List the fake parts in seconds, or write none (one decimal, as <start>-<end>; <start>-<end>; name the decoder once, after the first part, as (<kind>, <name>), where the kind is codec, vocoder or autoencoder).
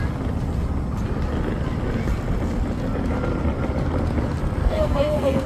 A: 4.6-5.5 (codec, SNAC)